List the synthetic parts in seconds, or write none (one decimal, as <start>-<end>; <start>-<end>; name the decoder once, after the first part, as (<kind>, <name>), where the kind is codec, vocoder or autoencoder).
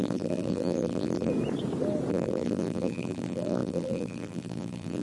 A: 0.0-1.3 (vocoder, BigVGAN v2); 2.1-5.0